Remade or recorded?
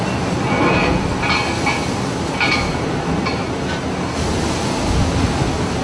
recorded